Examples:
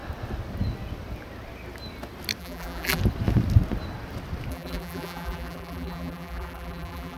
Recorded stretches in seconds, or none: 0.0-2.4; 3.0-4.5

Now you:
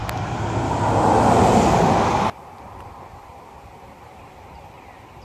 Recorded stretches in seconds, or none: 0.0-2.4

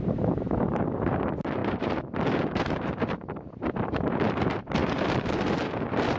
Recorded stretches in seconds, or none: none

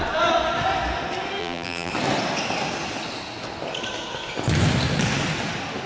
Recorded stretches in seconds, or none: 0.0-1.4; 1.9-5.9

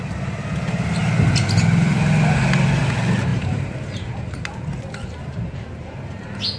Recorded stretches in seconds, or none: 0.0-3.3; 4.5-6.6

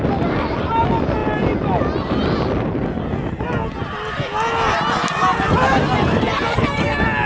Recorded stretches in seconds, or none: 0.0-7.3

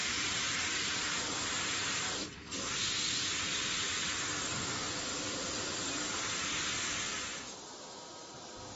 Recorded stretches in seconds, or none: 1.2-8.8